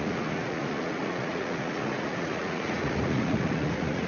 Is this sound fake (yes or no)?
yes